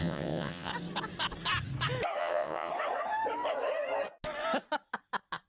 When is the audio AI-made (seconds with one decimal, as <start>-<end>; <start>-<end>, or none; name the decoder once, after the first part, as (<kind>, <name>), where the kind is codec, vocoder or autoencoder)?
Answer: 0.0-0.7 (vocoder, WaveNeXt); 2.2-2.7